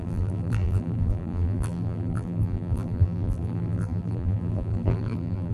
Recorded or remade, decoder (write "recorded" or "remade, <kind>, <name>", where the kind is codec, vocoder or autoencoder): remade, vocoder, BigVGAN v2